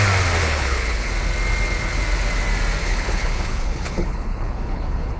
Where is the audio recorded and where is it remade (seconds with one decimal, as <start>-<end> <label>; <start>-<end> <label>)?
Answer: 0.0-0.4 recorded; 0.4-1.1 remade; 1.1-2.8 recorded; 2.8-5.2 remade